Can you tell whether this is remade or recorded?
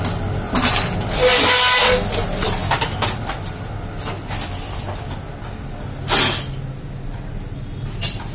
recorded